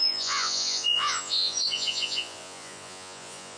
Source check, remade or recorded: remade